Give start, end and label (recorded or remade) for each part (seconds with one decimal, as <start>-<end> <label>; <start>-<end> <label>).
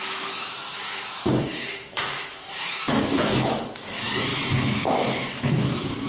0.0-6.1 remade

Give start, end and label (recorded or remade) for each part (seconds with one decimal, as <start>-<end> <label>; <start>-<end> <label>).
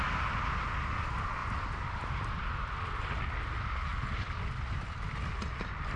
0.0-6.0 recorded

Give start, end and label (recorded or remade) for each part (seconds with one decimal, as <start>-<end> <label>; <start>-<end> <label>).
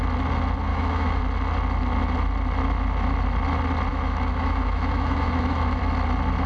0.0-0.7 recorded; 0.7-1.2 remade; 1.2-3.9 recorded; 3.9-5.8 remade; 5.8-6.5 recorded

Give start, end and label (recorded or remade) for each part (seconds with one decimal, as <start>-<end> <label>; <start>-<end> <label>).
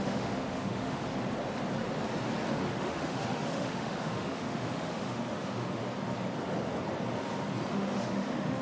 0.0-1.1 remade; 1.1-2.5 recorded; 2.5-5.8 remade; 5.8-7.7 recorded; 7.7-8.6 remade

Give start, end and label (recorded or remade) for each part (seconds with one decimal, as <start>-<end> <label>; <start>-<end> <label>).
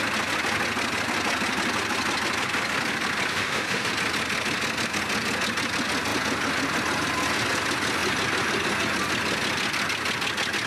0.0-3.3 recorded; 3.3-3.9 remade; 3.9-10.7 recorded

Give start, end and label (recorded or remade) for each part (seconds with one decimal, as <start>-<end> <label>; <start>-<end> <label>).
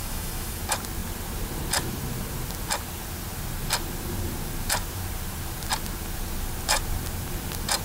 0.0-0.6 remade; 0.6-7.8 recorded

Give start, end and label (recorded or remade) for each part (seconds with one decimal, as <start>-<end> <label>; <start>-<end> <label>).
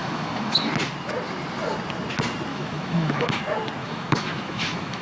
0.0-0.7 remade; 0.7-2.5 recorded; 2.5-3.4 remade; 3.4-3.8 recorded; 3.8-5.0 remade